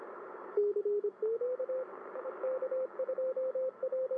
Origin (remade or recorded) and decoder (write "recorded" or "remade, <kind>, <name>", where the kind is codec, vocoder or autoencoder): recorded